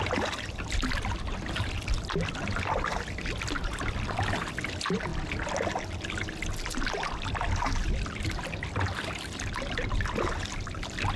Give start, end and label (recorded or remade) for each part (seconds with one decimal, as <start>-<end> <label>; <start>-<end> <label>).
0.0-11.2 recorded